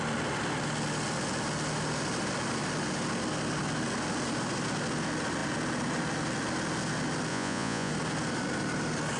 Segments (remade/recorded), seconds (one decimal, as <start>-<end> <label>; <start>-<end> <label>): 0.0-7.3 recorded; 7.3-7.9 remade; 7.9-9.2 recorded